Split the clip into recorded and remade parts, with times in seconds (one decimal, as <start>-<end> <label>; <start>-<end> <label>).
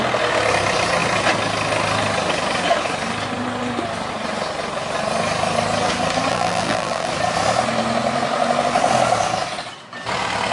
0.0-6.3 recorded; 6.3-7.1 remade; 7.1-10.5 recorded